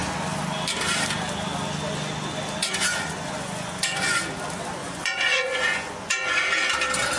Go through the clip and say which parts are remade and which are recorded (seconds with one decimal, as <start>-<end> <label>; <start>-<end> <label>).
0.0-2.6 recorded; 2.6-4.2 remade; 4.2-4.8 recorded; 4.8-6.5 remade; 6.5-7.2 recorded